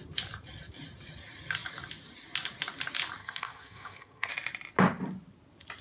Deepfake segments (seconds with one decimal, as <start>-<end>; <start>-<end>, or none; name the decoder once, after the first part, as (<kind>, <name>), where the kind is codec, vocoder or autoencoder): 3.2-4.3 (codec, SNAC)